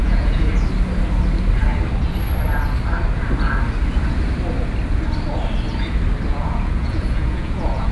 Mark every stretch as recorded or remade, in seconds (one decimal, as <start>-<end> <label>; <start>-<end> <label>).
0.0-0.5 remade; 0.5-6.3 recorded; 6.3-7.9 remade